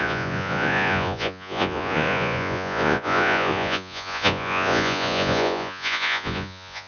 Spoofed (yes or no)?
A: yes